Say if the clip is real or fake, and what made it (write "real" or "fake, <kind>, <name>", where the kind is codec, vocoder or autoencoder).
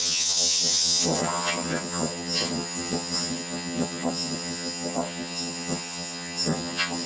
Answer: fake, vocoder, HiFi-GAN